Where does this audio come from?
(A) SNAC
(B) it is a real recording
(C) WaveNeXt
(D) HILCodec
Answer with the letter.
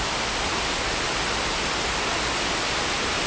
B